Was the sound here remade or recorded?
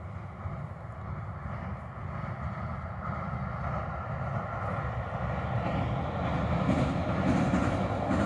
recorded